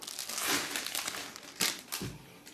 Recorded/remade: recorded